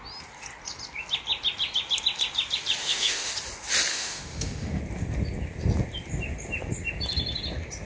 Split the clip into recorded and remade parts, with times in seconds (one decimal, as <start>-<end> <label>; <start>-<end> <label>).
0.0-2.8 recorded; 2.8-3.3 remade; 3.3-3.9 recorded; 3.9-4.8 remade; 4.8-7.9 recorded